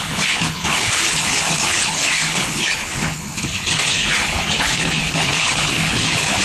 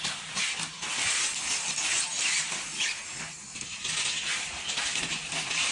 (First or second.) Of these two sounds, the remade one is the first